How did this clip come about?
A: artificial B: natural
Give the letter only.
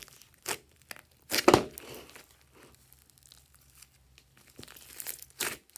B